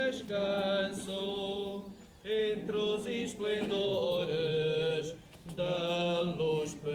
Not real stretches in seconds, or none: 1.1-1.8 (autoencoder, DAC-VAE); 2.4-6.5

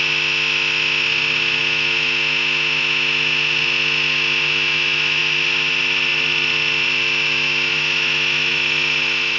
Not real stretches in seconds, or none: 0.0-9.4 (autoencoder, DAC-VAE)

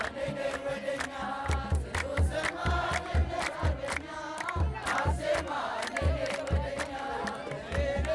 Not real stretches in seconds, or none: none

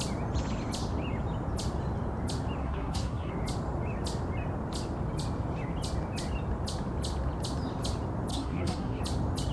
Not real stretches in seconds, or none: 2.6-3.3 (codec, SNAC); 8.3-9.0

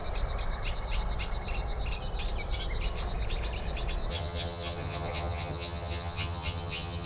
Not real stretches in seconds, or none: 4.1-7.1 (vocoder, HiFi-GAN)